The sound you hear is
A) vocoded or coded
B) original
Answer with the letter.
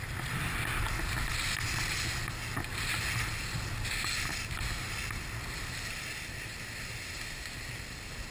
B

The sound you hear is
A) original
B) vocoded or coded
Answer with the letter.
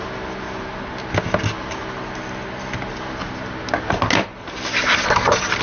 A